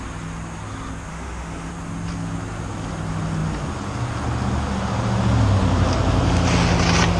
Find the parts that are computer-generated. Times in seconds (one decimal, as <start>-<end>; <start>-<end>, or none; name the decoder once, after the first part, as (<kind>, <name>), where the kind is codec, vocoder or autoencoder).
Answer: 1.1-1.7 (autoencoder, DAC-VAE)